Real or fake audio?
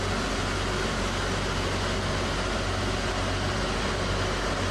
real